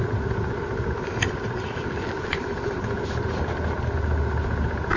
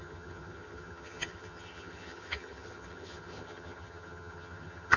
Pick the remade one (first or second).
second